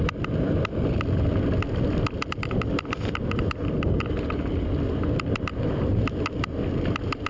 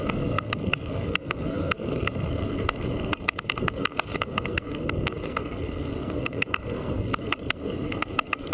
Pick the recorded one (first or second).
first